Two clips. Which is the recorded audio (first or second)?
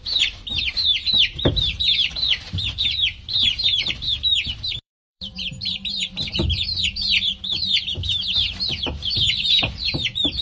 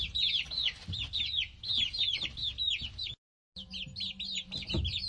second